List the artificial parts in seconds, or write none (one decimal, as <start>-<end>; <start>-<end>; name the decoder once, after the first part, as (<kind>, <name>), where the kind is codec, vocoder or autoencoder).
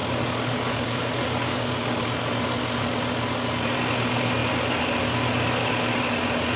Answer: 0.0-2.0 (codec, DAC)